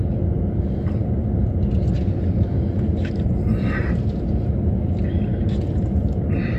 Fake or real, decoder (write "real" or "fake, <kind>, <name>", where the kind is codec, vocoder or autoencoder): real